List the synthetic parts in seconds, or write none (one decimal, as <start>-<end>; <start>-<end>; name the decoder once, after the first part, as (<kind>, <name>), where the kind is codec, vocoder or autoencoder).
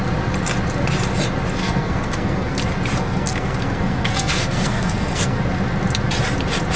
1.6-2.6 (codec, SNAC); 3.0-5.4